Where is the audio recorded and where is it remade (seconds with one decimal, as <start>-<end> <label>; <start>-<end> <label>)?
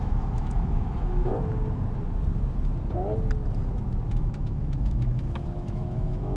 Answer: 0.0-1.3 remade; 1.3-4.1 recorded; 4.1-6.4 remade